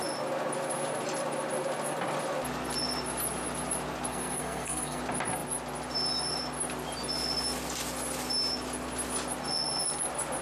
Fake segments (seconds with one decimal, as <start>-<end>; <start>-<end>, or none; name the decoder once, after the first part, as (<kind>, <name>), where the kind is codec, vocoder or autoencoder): 4.1-5.0 (codec, SNAC)